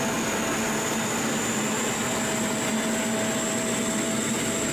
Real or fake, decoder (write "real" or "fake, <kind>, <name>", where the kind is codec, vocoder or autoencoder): real